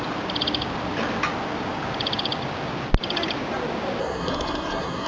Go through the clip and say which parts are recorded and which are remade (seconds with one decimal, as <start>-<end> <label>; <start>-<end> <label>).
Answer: 0.0-4.0 recorded; 4.0-5.1 remade